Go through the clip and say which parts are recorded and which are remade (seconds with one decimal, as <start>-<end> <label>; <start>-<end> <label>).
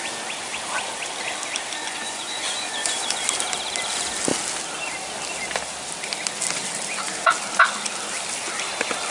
0.0-1.8 recorded; 1.8-3.2 remade; 3.2-9.1 recorded